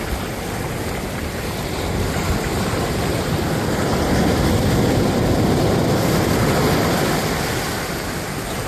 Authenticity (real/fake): real